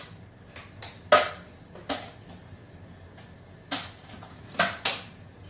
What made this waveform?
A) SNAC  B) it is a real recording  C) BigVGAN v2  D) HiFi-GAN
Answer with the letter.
B